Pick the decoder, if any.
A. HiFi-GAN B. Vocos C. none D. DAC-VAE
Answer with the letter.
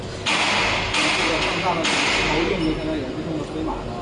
C